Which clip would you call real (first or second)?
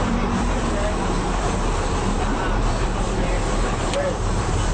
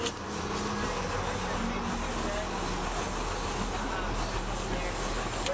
second